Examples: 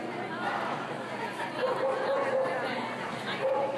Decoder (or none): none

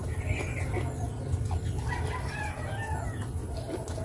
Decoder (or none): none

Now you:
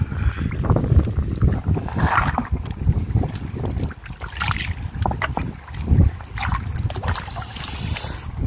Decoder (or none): none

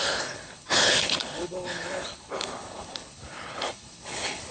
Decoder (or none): codec, HILCodec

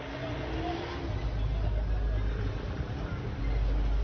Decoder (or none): none